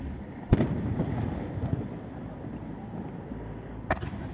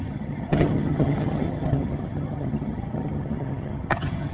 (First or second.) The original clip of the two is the first